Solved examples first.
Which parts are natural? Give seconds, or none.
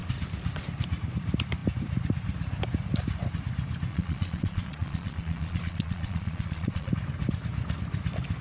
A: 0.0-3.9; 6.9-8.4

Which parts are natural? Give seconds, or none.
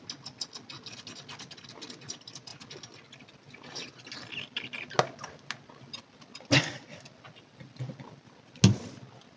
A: 0.0-9.4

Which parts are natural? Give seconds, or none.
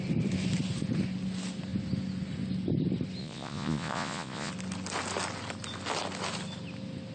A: 0.0-3.2; 4.5-7.1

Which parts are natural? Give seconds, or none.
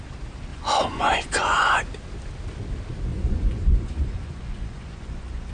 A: 0.0-0.5; 1.8-3.1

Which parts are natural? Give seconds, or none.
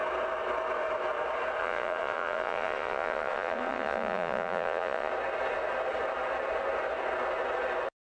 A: 0.0-1.6; 5.1-8.1